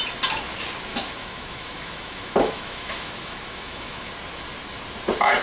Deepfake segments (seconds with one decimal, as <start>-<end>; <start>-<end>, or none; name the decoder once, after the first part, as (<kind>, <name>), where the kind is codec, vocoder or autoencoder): 0.9-4.1 (autoencoder, DAC-VAE)